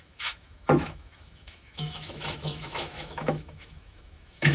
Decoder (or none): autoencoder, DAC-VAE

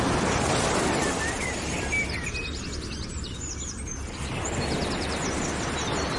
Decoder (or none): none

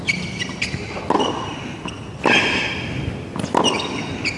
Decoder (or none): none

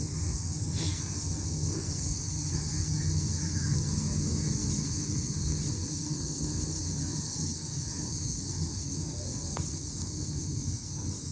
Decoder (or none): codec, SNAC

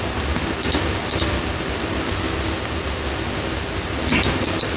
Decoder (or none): none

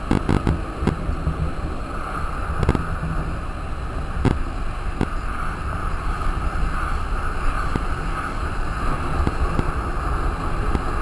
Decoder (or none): none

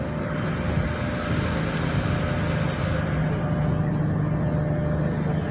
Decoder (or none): none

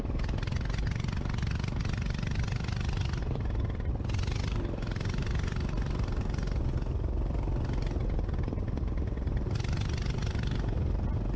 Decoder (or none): none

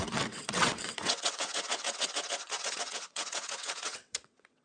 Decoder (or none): vocoder, WaveNeXt